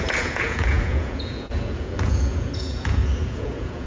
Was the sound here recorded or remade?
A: remade